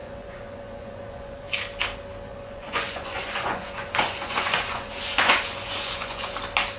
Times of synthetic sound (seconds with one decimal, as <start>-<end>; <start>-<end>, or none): 0.0-1.5; 2.3-6.3